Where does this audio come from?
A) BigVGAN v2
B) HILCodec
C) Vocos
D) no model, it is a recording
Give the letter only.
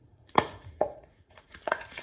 C